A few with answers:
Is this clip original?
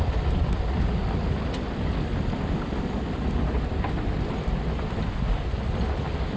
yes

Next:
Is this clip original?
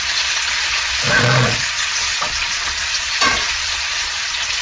no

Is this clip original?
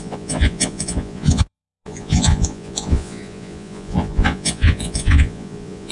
no